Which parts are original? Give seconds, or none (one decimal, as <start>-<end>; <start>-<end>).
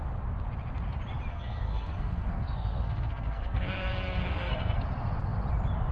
0.0-1.3; 4.8-5.9